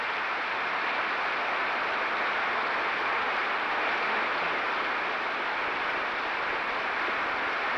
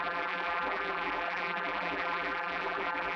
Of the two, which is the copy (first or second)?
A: second